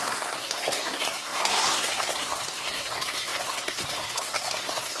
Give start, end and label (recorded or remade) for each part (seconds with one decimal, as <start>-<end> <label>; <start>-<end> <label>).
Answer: 0.0-5.0 remade